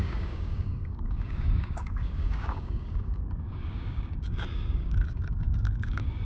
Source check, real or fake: fake